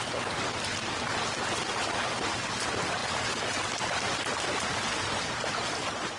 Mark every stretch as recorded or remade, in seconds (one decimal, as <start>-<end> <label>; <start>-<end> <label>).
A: 0.0-6.2 recorded